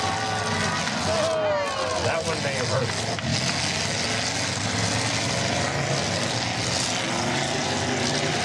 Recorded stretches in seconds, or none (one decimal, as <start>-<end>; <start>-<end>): 0.0-8.4